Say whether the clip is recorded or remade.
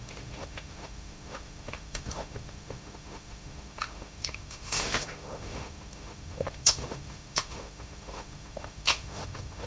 remade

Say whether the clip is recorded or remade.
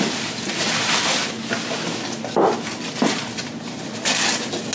recorded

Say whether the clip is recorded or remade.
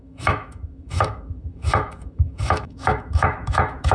remade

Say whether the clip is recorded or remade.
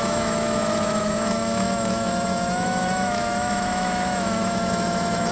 remade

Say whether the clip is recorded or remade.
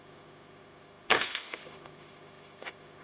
remade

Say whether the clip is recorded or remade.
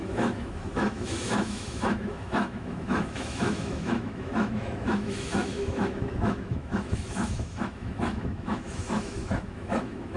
remade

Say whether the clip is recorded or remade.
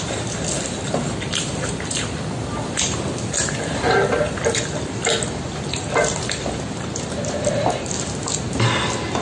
recorded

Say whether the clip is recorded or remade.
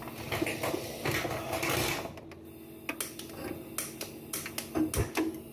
recorded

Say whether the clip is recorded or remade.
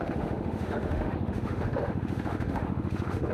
remade